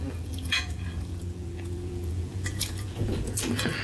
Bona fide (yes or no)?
no